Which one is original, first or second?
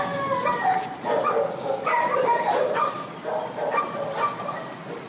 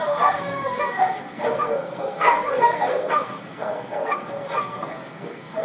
first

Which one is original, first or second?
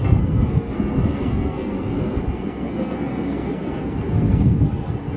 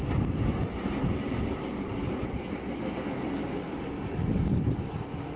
second